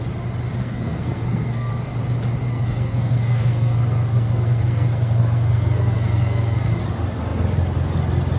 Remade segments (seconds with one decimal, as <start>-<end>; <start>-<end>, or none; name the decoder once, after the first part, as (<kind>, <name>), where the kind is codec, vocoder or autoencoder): 0.6-1.7 (codec, SNAC); 2.5-6.7